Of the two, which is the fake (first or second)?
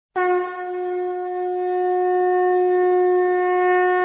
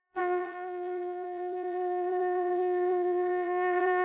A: second